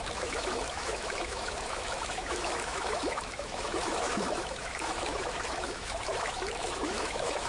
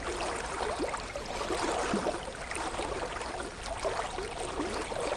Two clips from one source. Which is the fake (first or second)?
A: first